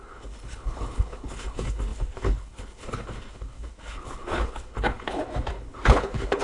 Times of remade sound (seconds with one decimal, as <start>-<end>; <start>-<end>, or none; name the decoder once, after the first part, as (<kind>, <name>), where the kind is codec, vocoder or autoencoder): 0.0-6.4 (codec, HILCodec)